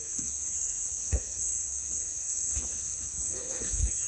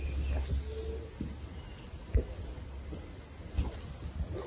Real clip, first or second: second